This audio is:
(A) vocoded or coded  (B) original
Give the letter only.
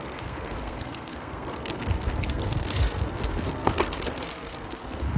A